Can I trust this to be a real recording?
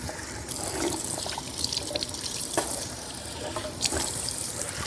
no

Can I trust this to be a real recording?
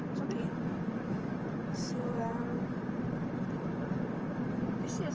no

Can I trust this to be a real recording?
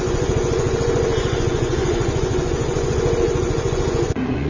no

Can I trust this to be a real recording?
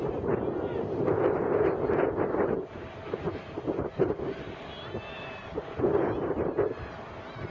yes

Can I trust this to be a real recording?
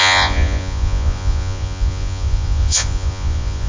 no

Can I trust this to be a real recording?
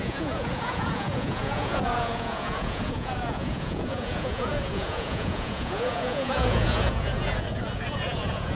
no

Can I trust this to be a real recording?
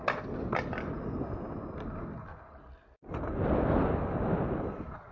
yes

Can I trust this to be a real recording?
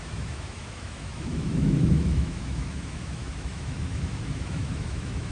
no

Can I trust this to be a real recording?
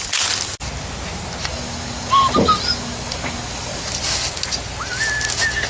yes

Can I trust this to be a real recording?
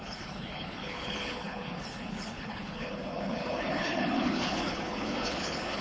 no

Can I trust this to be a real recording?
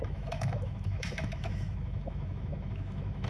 no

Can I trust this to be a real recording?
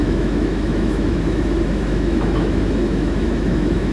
no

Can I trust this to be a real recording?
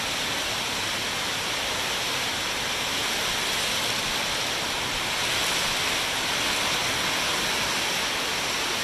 yes